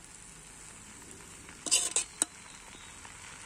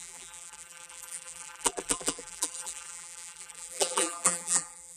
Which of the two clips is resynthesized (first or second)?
second